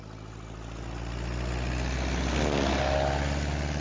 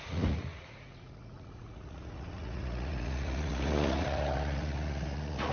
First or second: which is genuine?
first